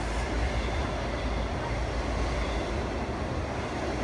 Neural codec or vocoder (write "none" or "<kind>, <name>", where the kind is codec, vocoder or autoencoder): none